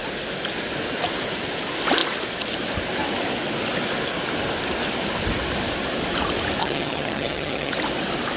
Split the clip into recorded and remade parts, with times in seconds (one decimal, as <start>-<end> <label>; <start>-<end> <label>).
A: 0.0-6.6 recorded; 6.6-7.7 remade; 7.7-8.4 recorded